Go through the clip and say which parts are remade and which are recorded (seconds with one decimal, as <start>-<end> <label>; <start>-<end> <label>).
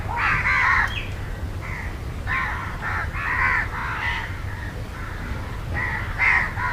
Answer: 0.0-3.8 recorded; 3.8-4.7 remade; 4.7-6.7 recorded